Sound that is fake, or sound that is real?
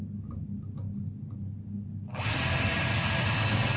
real